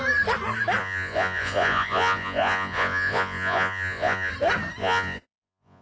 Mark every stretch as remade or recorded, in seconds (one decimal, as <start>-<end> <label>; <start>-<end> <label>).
0.0-0.8 recorded; 0.8-4.3 remade; 4.3-4.8 recorded; 4.8-5.8 remade